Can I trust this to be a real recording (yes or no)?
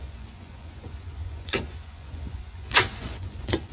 no